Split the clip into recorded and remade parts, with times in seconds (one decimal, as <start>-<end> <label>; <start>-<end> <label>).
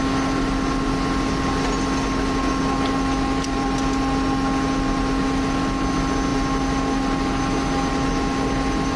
0.0-9.0 recorded